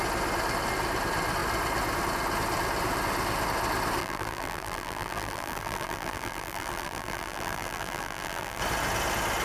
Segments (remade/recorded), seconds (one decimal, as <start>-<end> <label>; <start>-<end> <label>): 0.0-4.0 recorded; 4.0-8.6 remade; 8.6-9.4 recorded